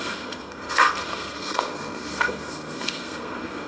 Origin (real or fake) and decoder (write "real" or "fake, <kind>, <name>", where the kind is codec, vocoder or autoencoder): fake, codec, SNAC